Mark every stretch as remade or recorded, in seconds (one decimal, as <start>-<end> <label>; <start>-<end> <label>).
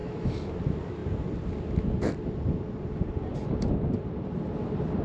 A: 0.0-0.5 remade; 0.5-5.0 recorded